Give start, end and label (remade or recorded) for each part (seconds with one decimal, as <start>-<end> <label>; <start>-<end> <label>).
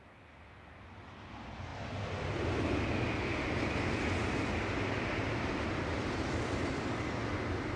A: 0.0-7.8 recorded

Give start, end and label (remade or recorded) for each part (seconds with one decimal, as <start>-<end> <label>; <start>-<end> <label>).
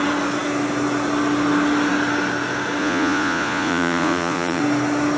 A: 0.0-2.8 recorded; 2.8-4.6 remade; 4.6-5.2 recorded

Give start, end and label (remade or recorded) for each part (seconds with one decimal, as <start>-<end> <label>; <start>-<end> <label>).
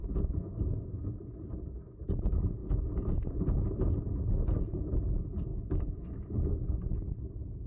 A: 0.0-7.7 recorded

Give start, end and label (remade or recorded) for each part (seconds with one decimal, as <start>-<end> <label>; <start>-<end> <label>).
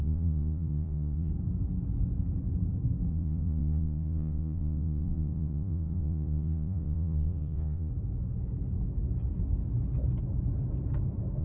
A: 0.0-1.3 remade; 1.3-3.1 recorded; 3.1-7.9 remade; 7.9-11.4 recorded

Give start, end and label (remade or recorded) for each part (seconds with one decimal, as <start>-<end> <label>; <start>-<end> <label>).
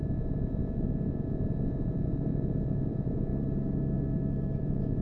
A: 0.0-3.3 remade; 3.3-4.6 recorded; 4.6-5.0 remade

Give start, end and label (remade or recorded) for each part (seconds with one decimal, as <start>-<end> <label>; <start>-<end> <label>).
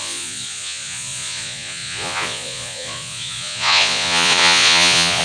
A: 0.0-5.2 remade